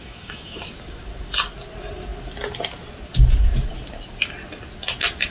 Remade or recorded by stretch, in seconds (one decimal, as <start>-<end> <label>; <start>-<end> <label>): 0.0-0.6 remade; 0.6-5.3 recorded